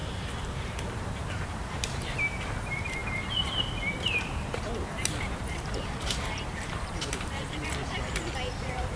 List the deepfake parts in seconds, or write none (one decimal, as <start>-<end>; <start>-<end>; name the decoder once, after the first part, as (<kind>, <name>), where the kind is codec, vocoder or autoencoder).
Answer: 0.0-7.8 (vocoder, BigVGAN v2); 8.6-9.0